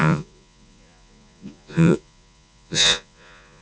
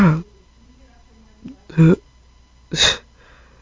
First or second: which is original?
second